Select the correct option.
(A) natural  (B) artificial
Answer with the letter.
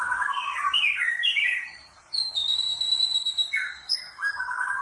B